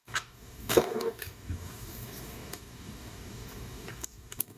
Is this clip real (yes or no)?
no